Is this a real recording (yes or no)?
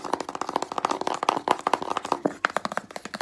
yes